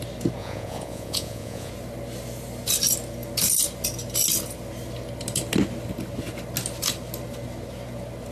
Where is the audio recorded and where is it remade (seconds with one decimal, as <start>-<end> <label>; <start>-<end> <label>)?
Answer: 0.0-0.4 recorded; 0.4-1.7 remade; 1.7-8.3 recorded